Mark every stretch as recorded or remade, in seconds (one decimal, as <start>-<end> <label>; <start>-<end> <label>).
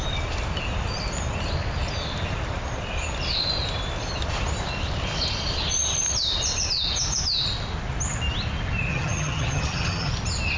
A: 0.0-8.9 recorded; 8.9-10.1 remade; 10.1-10.6 recorded